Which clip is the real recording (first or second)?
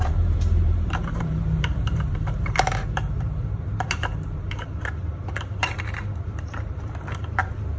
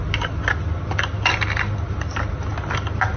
second